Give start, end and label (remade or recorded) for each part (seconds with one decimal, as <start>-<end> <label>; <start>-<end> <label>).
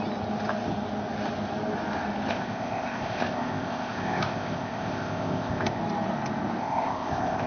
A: 0.0-2.3 recorded; 2.3-5.8 remade; 5.8-6.6 recorded; 6.6-7.5 remade